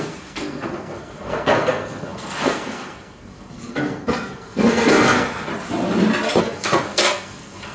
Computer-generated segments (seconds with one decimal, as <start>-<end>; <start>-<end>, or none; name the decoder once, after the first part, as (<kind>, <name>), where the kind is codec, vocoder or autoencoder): 0.0-5.5 (codec, SNAC); 6.4-7.7